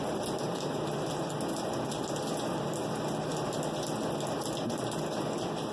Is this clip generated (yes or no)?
no